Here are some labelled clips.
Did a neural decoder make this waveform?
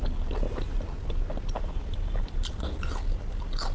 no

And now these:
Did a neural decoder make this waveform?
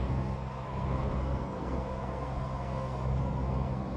yes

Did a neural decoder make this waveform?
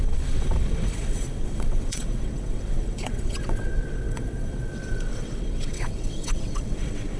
yes